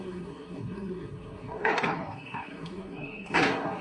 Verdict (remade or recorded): remade